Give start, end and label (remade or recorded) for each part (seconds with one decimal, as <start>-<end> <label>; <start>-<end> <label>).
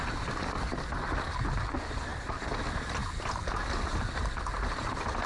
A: 0.0-5.3 recorded